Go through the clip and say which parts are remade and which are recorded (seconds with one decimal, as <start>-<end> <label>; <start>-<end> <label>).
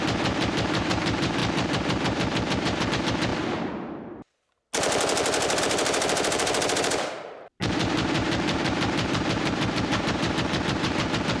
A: 0.0-3.3 remade; 3.3-5.6 recorded; 5.6-11.4 remade